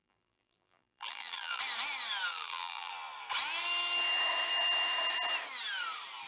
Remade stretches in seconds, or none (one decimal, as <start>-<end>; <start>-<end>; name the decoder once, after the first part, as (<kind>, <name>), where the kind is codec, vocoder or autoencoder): 0.0-1.6 (vocoder, BigVGAN v2); 2.3-2.9